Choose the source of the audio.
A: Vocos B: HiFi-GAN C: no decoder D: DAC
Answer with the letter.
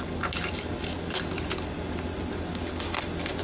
C